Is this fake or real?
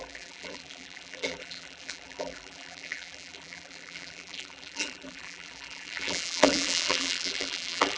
fake